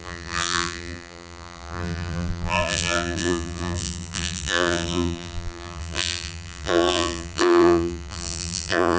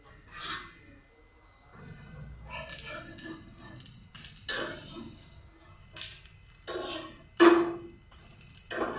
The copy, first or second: first